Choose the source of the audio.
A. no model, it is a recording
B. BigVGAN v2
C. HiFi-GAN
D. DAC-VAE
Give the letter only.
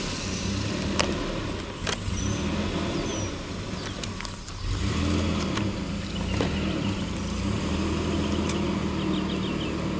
A